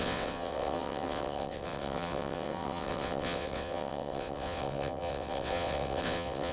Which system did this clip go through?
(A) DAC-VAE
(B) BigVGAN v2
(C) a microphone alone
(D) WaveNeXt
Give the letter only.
D